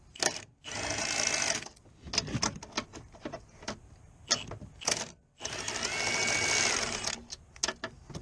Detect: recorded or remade recorded